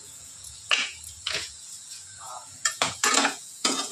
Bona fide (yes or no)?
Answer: no